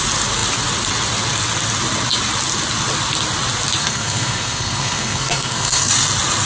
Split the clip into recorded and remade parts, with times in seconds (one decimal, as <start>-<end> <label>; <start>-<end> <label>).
0.0-3.8 recorded; 3.8-5.9 remade; 5.9-6.5 recorded